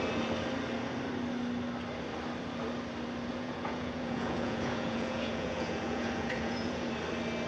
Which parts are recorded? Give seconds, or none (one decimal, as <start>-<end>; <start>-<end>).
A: 0.0-3.3; 6.9-7.5